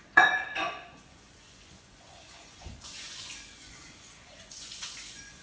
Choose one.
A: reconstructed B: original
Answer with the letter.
A